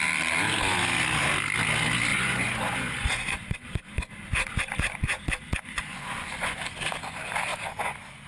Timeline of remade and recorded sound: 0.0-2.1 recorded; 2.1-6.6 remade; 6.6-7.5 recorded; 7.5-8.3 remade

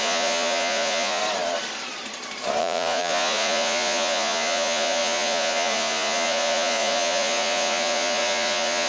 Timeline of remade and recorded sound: 0.0-1.2 remade; 1.2-2.6 recorded; 2.6-8.9 remade